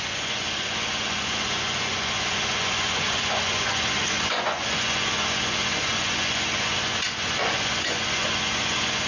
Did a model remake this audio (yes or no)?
yes